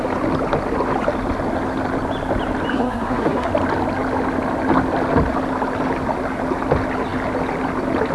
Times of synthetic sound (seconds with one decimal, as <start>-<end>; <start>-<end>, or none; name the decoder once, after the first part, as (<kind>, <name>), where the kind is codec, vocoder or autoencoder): 2.7-3.5 (codec, SNAC)